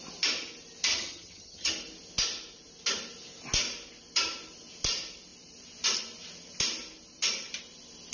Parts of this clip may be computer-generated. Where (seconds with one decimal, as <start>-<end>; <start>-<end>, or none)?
0.9-1.7